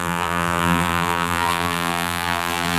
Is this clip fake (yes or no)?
yes